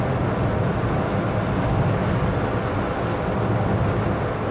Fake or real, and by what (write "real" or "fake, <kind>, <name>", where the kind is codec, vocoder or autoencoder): real